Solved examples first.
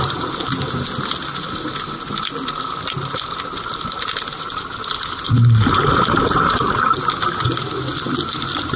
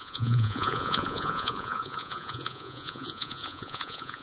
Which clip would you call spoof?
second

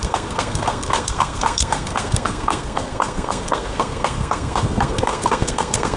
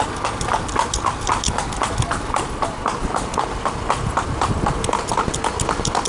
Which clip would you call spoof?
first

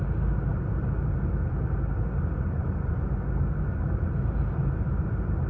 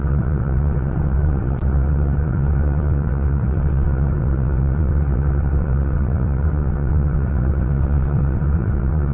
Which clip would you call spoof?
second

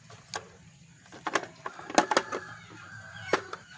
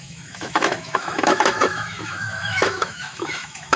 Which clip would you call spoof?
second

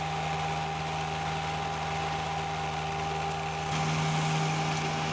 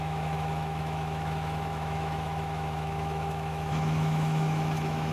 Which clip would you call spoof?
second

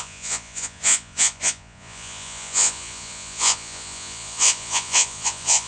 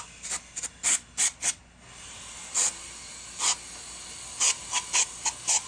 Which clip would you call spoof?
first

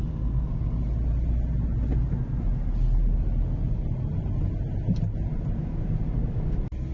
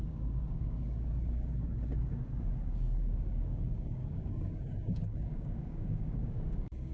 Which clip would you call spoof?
second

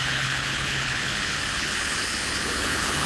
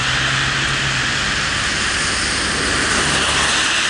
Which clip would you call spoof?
first